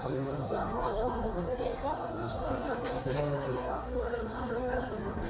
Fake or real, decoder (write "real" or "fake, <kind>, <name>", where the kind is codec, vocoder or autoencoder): fake, codec, SNAC